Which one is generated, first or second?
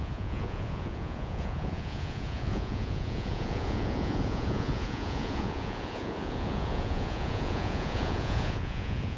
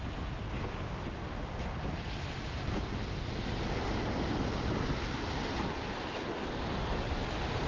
first